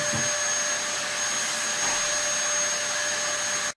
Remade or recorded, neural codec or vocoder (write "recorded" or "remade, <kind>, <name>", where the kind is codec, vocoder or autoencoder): recorded